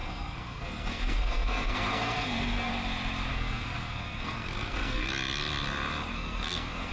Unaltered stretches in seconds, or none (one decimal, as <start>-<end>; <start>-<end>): 2.7-3.3; 5.1-6.1